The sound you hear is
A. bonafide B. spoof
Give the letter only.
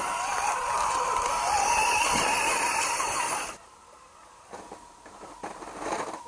B